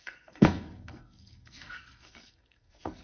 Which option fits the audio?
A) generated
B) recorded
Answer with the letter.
A